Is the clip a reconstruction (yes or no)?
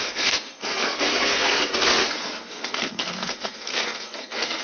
yes